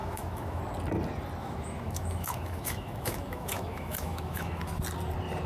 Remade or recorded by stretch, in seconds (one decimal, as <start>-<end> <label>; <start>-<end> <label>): 0.0-0.6 remade; 0.6-1.4 recorded; 1.4-4.7 remade; 4.7-5.5 recorded